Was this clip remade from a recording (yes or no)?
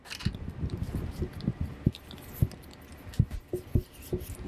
no